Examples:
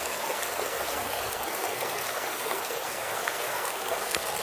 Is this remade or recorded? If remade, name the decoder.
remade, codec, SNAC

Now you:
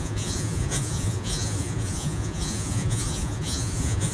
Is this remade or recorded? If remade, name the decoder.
remade, vocoder, Vocos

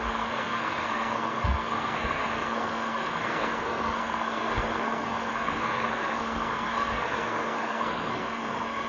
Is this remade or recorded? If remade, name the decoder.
remade, codec, SNAC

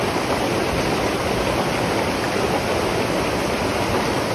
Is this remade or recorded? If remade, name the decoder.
recorded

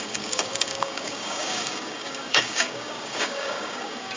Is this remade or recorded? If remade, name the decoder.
remade, codec, DAC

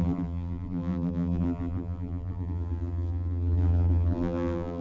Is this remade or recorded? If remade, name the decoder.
remade, vocoder, BigVGAN v2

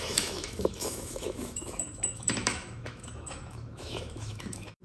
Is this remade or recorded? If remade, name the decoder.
remade, autoencoder, DAC-VAE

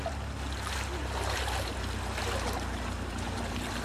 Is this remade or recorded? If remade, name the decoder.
recorded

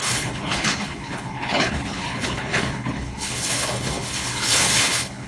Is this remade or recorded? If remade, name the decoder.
remade, codec, HILCodec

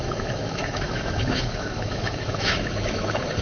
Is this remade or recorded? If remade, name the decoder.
remade, autoencoder, DAC-VAE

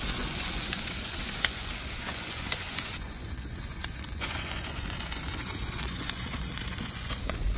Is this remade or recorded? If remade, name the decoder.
remade, vocoder, Vocos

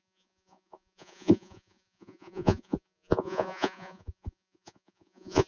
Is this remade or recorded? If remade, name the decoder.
remade, vocoder, Vocos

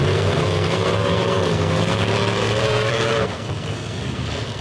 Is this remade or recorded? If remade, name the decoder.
remade, codec, SNAC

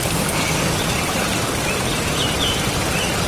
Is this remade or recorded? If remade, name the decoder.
recorded